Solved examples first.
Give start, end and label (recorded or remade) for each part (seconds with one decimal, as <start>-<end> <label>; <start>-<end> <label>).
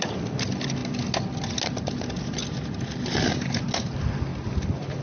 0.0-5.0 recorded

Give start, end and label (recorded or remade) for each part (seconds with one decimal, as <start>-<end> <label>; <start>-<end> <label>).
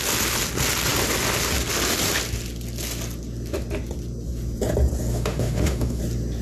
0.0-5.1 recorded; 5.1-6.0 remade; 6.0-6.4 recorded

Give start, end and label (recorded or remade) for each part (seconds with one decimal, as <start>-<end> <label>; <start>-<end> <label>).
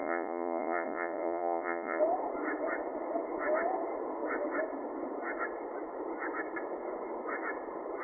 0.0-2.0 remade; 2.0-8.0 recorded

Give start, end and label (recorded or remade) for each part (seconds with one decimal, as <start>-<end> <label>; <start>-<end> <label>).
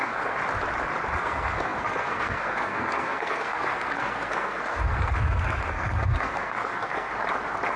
0.0-0.4 remade; 0.4-1.2 recorded; 1.2-7.1 remade; 7.1-7.8 recorded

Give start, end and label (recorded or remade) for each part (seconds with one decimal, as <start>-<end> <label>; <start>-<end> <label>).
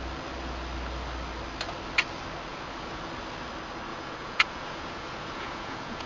0.0-2.5 recorded; 2.5-3.0 remade; 3.0-3.9 recorded; 3.9-6.1 remade